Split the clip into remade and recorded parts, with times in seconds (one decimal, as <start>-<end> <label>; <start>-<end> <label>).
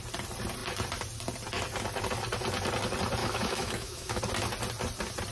0.0-3.2 recorded; 3.2-4.2 remade; 4.2-5.3 recorded